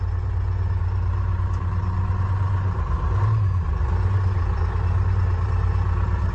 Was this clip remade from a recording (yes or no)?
yes